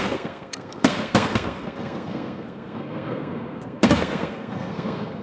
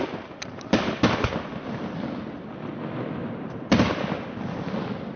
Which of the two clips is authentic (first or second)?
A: second